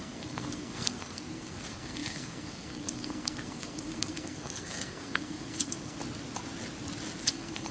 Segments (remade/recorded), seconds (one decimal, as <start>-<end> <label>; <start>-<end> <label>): 0.0-6.0 remade; 6.0-7.3 recorded; 7.3-7.7 remade